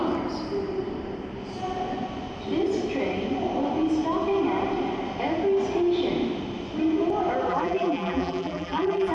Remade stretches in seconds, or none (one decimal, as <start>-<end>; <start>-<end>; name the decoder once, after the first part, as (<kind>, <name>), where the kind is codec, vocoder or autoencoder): 7.5-9.1 (vocoder, BigVGAN v2)